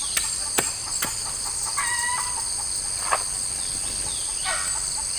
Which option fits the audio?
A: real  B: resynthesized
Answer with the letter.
A